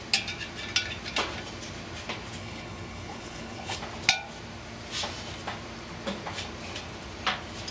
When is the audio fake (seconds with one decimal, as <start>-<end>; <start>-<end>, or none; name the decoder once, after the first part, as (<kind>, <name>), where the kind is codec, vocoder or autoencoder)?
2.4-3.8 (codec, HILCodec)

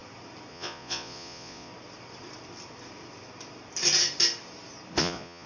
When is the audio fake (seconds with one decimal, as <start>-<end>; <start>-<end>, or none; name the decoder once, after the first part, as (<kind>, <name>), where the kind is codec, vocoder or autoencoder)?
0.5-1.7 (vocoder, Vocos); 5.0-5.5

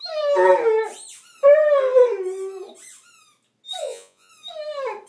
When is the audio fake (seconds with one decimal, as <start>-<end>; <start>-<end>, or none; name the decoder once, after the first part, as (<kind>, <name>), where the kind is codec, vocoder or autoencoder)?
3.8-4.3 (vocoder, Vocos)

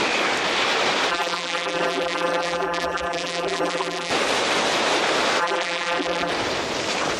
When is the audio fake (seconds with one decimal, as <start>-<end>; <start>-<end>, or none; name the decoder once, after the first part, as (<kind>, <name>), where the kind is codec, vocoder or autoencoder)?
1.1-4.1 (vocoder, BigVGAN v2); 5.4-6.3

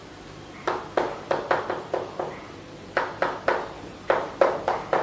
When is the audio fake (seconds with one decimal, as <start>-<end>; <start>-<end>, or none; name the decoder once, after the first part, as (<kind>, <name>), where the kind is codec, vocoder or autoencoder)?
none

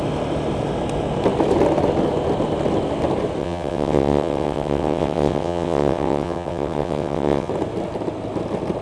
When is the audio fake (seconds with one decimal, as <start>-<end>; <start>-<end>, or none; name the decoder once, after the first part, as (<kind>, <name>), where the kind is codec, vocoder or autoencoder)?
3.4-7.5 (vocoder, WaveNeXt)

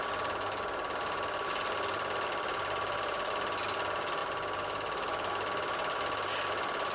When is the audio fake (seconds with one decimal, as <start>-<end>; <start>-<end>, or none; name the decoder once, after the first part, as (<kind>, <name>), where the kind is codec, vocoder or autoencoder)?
none